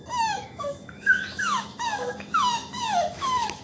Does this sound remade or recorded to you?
remade